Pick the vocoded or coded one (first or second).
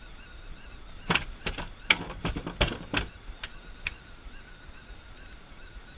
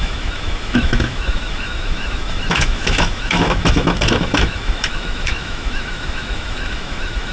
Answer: second